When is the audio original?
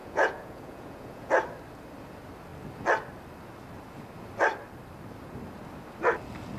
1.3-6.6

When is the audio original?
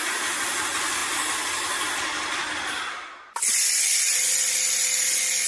0.0-5.5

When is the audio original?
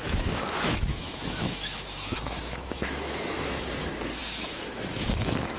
none